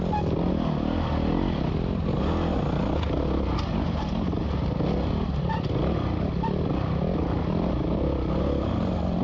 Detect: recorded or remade recorded